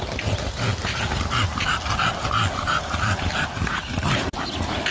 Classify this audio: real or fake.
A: real